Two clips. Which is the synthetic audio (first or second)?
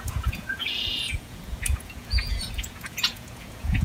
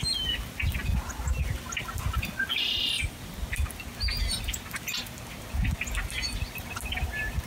first